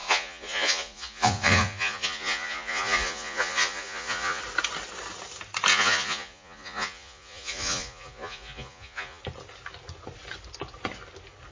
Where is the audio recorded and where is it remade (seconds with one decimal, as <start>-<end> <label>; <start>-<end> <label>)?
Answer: 0.0-4.4 remade; 4.4-5.7 recorded; 5.7-9.2 remade; 9.2-11.5 recorded